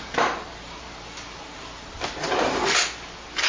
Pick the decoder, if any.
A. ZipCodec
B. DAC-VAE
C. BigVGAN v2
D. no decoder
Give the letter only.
C